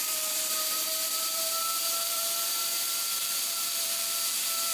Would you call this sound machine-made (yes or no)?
yes